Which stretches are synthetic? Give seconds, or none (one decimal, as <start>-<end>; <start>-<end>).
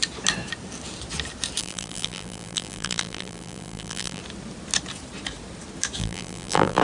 1.6-4.2; 6.0-6.8